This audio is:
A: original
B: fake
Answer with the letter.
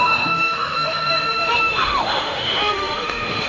B